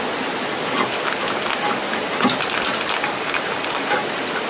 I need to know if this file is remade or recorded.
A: recorded